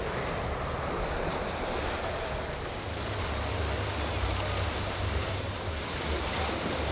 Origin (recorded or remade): recorded